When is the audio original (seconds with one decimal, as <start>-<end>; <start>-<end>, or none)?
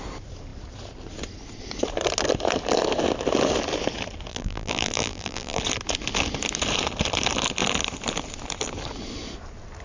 0.0-4.3; 5.6-9.8